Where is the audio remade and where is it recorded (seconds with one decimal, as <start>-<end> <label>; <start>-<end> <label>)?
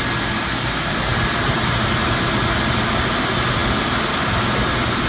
0.0-5.1 recorded